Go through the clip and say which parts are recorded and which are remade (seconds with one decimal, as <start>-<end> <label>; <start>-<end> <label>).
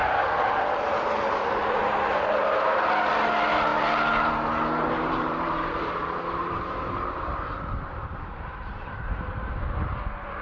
0.0-4.8 recorded; 4.8-9.6 remade; 9.6-10.4 recorded